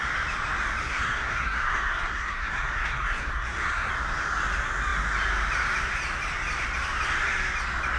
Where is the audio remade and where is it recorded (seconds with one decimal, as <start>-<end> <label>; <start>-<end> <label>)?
0.0-0.8 recorded; 0.8-3.9 remade; 3.9-8.0 recorded